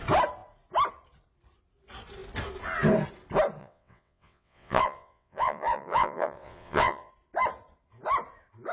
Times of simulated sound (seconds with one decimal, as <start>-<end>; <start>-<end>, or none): 3.6-7.1